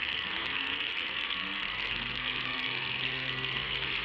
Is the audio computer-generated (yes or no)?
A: yes